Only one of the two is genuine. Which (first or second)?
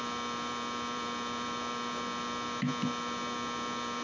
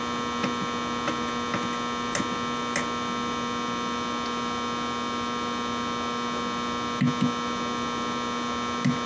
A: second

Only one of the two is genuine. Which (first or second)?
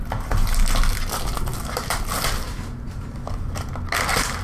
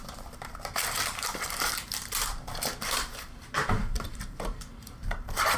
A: first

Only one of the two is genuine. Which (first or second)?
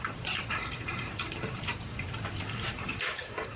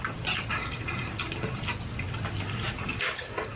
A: second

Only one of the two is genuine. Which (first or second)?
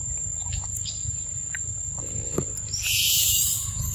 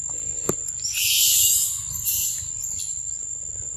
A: second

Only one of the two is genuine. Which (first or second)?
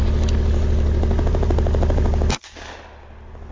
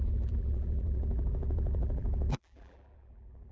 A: first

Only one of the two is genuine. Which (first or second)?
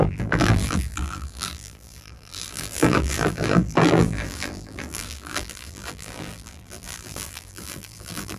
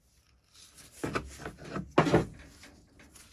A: second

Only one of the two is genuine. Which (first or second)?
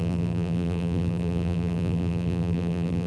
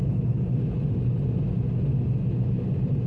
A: second